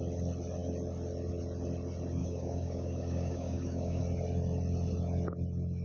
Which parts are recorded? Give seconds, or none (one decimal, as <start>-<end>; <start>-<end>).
0.0-2.2; 4.0-5.8